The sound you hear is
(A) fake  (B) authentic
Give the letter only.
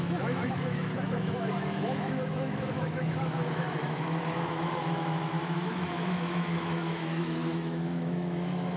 A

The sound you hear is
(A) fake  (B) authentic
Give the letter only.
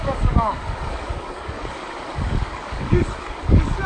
A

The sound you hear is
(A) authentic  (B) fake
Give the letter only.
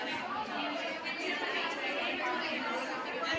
A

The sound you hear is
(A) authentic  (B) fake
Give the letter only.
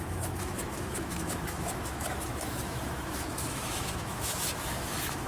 B